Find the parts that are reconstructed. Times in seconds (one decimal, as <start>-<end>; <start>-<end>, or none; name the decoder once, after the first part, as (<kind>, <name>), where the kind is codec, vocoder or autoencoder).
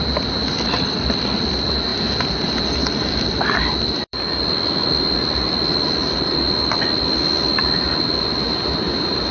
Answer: 1.9-4.4 (vocoder, BigVGAN v2)